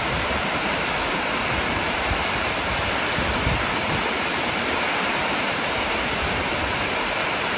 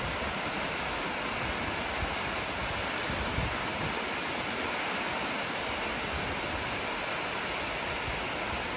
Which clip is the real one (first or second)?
second